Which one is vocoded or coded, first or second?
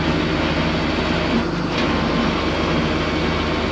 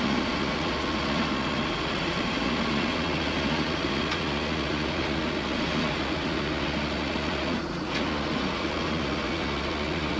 second